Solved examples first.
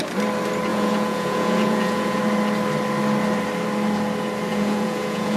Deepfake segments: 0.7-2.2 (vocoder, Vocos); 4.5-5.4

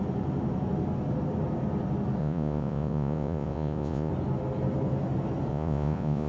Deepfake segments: 2.2-4.1 (vocoder, Vocos); 5.5-6.3

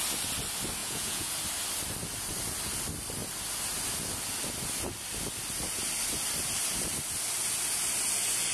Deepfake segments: 0.8-1.3 (vocoder, Vocos)